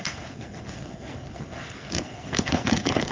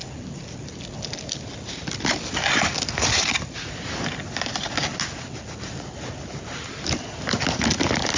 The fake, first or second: first